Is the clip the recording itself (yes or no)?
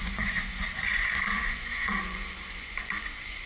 no